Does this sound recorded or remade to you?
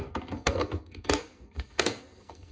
remade